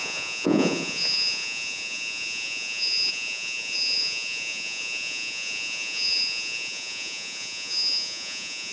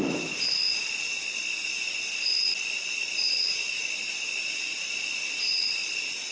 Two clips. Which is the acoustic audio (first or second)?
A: second